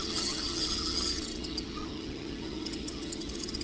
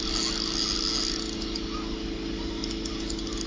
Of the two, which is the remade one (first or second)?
first